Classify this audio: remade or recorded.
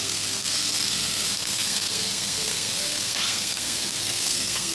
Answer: remade